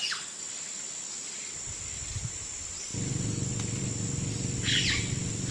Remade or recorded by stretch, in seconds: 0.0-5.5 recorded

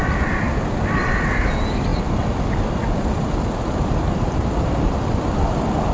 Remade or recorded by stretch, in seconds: 0.0-5.9 recorded